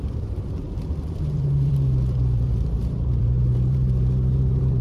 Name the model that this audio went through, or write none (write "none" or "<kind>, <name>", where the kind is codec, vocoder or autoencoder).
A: vocoder, BigVGAN v2